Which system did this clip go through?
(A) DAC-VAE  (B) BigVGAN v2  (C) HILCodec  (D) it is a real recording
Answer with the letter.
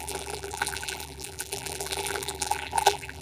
B